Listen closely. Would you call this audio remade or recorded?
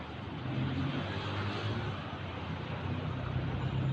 recorded